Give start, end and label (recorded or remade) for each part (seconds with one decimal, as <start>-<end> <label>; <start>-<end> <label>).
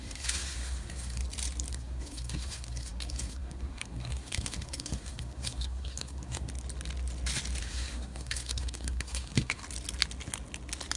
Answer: 0.0-1.2 remade; 1.2-1.7 recorded; 1.7-6.5 remade; 6.5-7.6 recorded; 7.6-9.6 remade; 9.6-11.0 recorded